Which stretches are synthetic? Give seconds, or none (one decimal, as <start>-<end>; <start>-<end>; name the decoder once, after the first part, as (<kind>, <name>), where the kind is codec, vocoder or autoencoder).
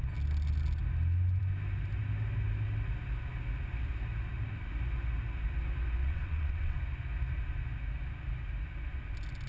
6.0-6.8 (vocoder, WaveNeXt)